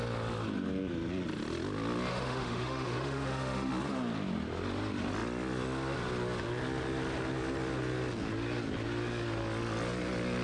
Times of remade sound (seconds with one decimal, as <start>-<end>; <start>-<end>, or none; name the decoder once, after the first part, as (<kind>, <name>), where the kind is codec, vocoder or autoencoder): 2.1-3.7 (autoencoder, DAC-VAE)